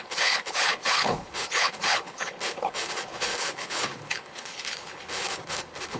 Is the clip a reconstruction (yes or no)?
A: yes